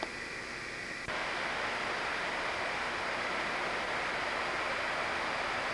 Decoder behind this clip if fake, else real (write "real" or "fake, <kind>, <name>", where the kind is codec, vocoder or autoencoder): real